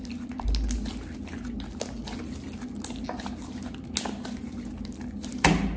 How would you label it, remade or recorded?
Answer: recorded